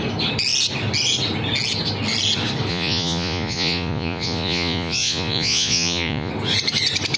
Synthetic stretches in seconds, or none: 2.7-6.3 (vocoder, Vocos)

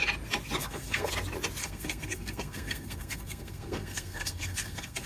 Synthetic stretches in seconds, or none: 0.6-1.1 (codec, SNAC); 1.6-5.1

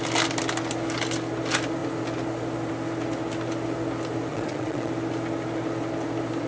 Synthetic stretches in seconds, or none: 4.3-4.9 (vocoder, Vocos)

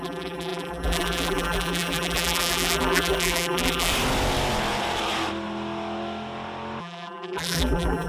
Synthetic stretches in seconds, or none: 0.0-3.9 (vocoder, BigVGAN v2); 6.8-8.1